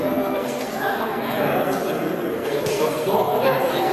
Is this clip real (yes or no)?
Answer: no